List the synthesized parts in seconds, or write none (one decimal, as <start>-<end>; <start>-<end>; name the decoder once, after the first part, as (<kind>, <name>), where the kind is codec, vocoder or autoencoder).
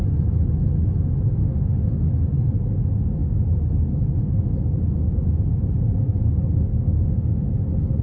1.4-2.1 (autoencoder, DAC-VAE); 6.7-7.5